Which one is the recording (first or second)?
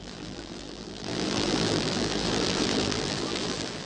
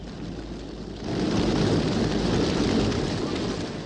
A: second